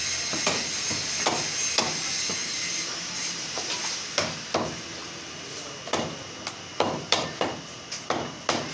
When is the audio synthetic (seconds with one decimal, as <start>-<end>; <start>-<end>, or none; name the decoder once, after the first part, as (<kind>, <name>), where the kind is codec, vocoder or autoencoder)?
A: 2.4-3.4 (vocoder, BigVGAN v2); 6.7-7.2